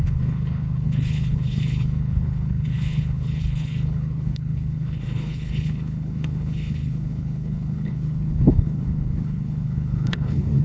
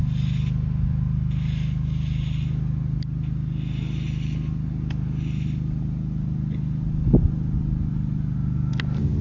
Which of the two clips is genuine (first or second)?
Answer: second